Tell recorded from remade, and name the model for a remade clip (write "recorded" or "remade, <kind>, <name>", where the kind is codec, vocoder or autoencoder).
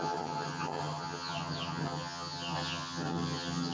remade, vocoder, HiFi-GAN